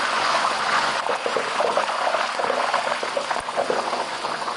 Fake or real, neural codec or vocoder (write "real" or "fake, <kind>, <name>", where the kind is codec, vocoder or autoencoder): fake, vocoder, Vocos